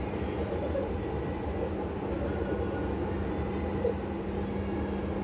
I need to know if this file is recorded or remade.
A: recorded